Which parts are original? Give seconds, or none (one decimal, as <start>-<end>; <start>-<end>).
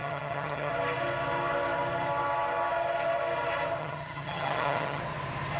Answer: 0.7-3.8; 5.0-5.6